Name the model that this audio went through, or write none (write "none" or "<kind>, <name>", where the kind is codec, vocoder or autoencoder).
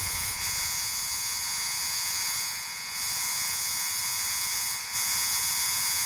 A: vocoder, Vocos